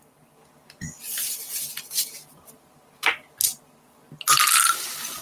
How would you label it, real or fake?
real